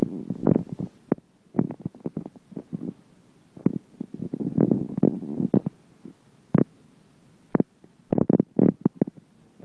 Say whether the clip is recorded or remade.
recorded